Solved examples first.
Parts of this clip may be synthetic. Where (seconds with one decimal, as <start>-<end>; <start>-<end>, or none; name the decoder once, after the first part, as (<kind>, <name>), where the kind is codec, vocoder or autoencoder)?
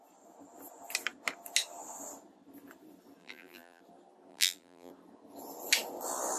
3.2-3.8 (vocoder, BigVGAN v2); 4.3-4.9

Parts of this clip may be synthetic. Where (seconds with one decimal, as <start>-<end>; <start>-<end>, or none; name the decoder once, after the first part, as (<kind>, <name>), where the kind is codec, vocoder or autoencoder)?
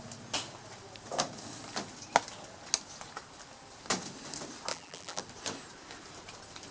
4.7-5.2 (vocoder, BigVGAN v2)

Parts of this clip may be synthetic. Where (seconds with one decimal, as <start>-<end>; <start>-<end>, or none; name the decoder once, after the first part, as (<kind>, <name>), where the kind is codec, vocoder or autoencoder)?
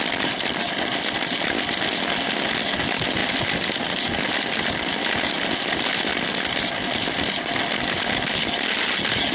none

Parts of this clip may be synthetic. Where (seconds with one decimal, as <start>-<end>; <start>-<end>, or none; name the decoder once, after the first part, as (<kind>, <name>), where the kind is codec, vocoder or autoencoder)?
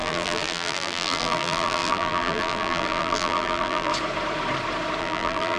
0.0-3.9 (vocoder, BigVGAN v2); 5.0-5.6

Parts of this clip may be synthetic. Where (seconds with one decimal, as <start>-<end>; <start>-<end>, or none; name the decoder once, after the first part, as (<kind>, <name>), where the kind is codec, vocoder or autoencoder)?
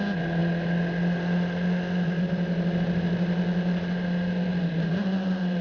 none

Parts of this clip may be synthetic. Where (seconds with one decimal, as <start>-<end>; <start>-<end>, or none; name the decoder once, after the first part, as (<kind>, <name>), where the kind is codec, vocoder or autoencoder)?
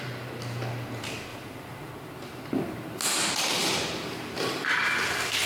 1.3-1.9 (vocoder, BigVGAN v2); 3.6-4.8